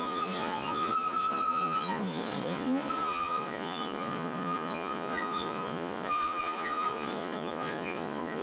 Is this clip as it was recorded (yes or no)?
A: no